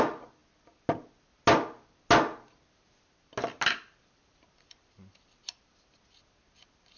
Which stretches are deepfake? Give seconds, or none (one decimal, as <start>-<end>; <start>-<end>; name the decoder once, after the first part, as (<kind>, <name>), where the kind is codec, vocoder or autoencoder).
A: none